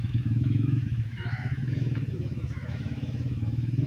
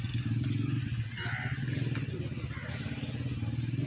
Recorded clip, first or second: second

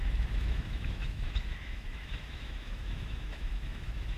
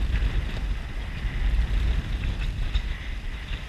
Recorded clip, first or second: second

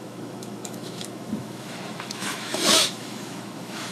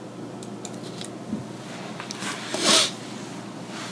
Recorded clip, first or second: second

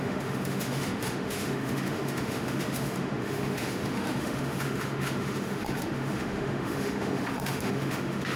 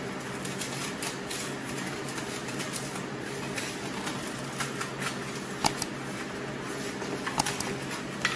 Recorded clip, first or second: second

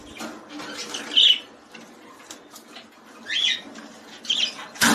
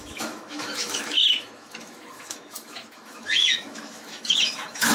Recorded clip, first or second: first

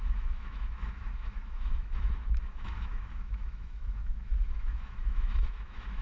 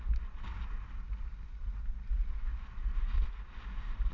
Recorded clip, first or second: second